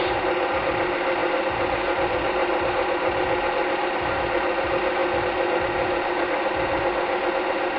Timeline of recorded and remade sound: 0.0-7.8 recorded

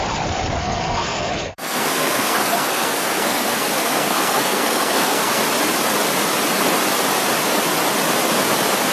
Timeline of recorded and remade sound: 0.0-0.6 recorded; 0.6-5.4 remade; 5.4-8.9 recorded